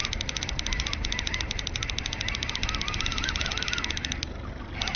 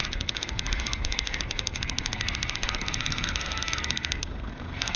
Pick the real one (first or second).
first